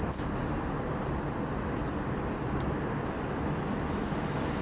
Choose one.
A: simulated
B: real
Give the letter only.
B